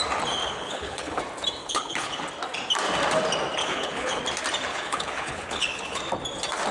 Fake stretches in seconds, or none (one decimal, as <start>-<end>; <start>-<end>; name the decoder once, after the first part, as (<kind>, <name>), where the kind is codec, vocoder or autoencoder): 0.4-1.2 (codec, HILCodec); 1.6-2.2; 3.6-4.2; 4.7-6.0